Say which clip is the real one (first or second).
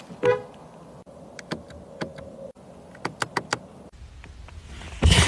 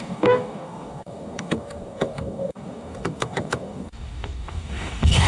first